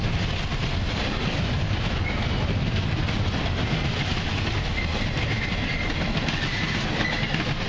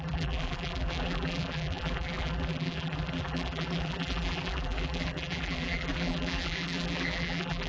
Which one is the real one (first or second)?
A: first